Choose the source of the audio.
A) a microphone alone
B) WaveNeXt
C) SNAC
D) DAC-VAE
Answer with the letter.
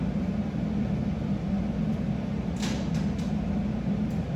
A